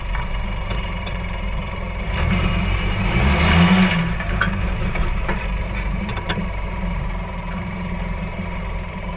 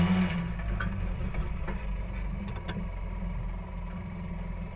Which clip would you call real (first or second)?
second